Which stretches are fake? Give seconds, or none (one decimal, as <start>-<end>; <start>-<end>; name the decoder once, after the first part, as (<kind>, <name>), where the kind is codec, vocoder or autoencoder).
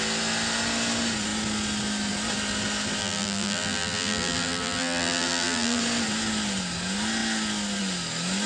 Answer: 3.0-5.8 (vocoder, BigVGAN v2)